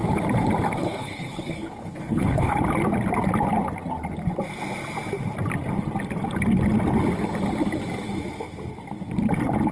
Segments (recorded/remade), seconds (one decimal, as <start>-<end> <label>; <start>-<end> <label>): 0.0-0.8 recorded; 0.8-2.6 remade; 2.6-9.7 recorded